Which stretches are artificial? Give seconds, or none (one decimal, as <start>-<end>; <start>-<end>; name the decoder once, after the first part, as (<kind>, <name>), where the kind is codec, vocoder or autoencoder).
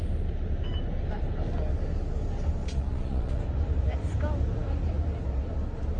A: 2.6-3.4 (vocoder, Vocos)